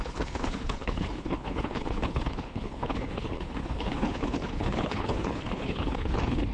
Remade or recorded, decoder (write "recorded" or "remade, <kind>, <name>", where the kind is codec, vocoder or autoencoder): remade, codec, HILCodec